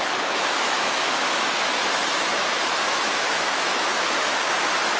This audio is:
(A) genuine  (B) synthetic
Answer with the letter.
B